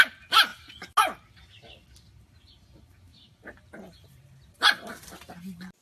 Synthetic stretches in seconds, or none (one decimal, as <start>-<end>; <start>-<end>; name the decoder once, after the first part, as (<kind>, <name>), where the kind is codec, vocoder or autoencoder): 3.1-4.9 (vocoder, BigVGAN v2)

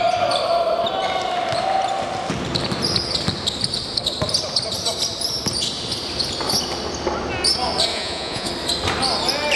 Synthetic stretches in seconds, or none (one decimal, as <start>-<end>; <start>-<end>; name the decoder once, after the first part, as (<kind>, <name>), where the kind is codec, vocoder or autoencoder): 7.9-8.5 (vocoder, Vocos)

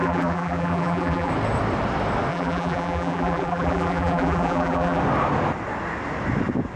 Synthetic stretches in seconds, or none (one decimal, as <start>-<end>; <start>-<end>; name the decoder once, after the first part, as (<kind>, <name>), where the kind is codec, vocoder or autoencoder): 0.0-1.3 (vocoder, BigVGAN v2); 2.3-5.0

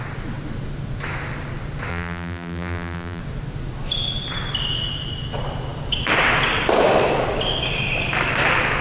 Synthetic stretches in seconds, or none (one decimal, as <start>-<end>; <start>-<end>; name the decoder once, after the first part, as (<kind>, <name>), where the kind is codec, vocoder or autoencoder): 1.9-3.2 (vocoder, BigVGAN v2)

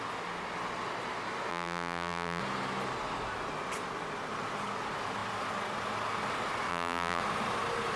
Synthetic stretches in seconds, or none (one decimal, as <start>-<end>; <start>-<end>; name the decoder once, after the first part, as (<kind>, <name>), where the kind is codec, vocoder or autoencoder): 1.5-2.4 (vocoder, BigVGAN v2); 6.7-7.2

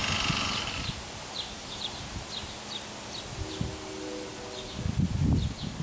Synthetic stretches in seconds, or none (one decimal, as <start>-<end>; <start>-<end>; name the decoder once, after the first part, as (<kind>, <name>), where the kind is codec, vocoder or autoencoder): none

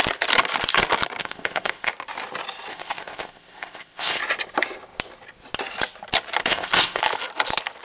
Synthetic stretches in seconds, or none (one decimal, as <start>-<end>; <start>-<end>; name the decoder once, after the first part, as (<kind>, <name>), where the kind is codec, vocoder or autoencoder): 1.2-1.9 (codec, ZipCodec); 2.7-4.2; 6.5-7.0